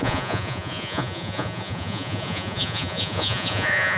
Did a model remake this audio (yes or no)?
yes